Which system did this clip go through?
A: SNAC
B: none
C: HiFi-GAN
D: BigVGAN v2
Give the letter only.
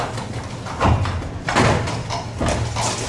B